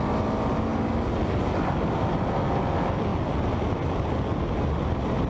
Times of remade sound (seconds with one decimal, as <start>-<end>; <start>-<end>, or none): none

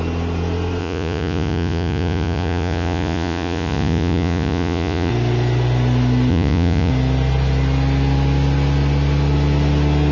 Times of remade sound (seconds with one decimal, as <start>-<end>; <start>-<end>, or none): 0.8-5.1; 6.3-6.9

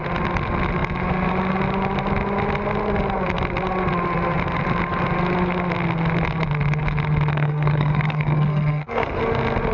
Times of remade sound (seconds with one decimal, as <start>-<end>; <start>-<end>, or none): 7.3-9.2

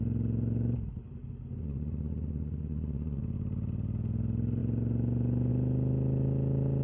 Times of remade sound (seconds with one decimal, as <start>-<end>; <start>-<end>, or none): 1.6-3.2